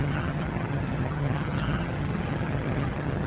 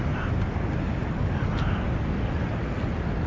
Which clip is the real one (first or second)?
second